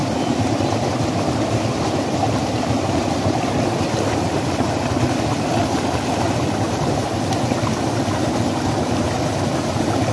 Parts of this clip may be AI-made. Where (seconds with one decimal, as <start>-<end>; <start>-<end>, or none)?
none